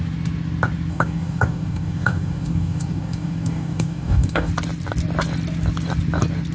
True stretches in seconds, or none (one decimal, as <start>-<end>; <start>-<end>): 0.0-0.9; 4.5-6.5